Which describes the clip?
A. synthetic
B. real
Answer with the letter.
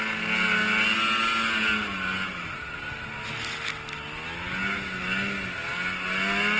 B